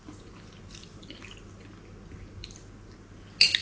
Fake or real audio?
real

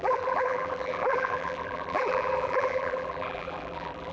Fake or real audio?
fake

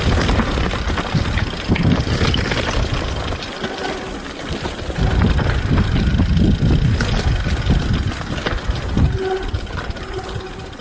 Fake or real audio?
real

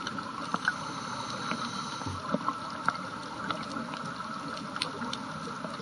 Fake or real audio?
real